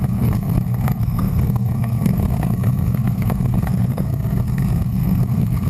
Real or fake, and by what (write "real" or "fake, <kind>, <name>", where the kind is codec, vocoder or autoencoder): fake, codec, SNAC